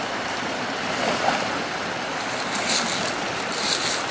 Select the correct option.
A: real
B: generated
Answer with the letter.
A